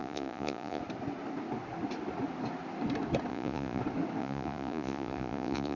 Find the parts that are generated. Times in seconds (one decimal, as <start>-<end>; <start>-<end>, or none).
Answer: 0.0-0.8; 3.3-3.8; 4.2-5.8